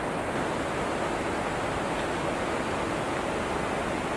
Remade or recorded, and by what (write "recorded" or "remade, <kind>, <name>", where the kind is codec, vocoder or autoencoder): recorded